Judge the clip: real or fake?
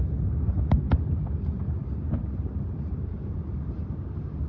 real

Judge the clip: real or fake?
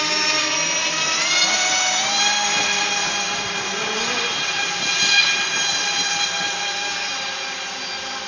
fake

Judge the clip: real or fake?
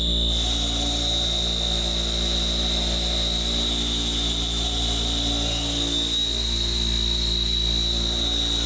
real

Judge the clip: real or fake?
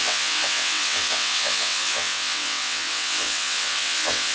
fake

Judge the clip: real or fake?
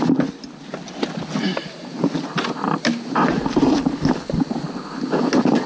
real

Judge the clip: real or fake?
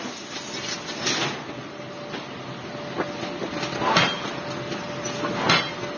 real